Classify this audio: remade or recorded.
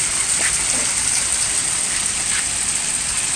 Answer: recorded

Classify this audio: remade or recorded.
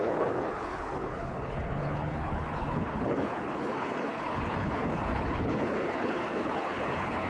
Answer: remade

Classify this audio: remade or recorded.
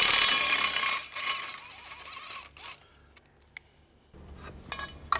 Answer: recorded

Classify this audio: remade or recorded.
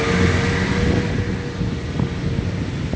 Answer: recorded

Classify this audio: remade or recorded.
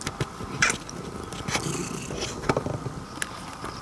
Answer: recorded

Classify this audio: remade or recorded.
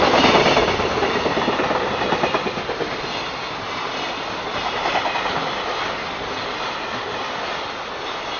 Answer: recorded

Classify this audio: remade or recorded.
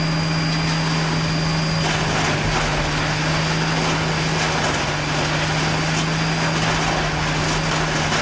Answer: recorded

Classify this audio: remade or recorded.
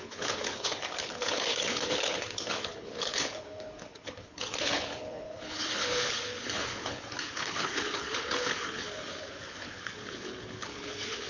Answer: remade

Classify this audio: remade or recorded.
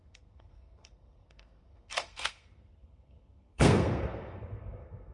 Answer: remade